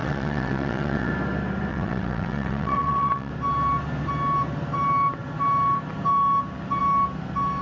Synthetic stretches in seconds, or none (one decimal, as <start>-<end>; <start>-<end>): 0.0-1.1; 1.7-3.3